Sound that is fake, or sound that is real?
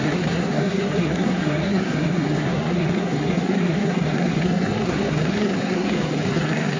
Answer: fake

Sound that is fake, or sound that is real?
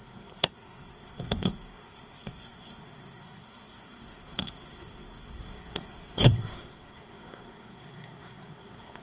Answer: fake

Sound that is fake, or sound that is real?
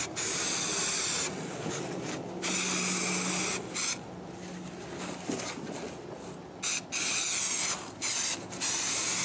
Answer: real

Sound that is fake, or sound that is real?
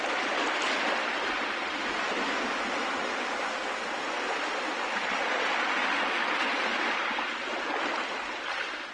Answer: real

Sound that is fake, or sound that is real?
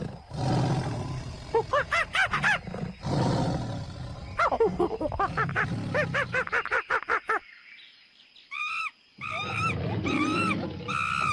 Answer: real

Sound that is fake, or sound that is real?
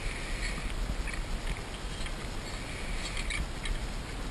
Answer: real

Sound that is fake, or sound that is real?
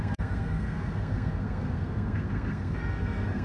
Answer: fake